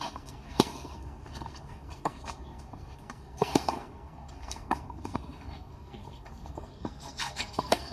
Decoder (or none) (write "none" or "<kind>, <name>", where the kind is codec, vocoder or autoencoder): codec, SNAC